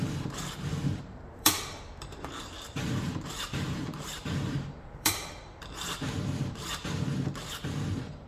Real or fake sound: fake